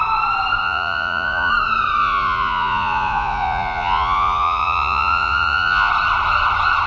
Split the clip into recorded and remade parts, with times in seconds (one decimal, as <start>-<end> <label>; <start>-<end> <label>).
0.0-0.6 recorded; 0.6-1.5 remade; 1.5-2.0 recorded; 2.0-5.9 remade; 5.9-6.9 recorded